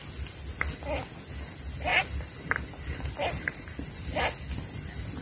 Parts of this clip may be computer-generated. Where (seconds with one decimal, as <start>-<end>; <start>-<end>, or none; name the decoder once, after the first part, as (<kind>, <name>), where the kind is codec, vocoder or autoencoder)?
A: 1.9-4.1 (vocoder, BigVGAN v2)